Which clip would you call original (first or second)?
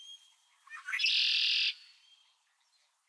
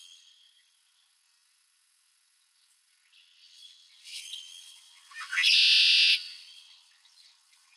first